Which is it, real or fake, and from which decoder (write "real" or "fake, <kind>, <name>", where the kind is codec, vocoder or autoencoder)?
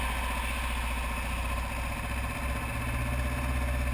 real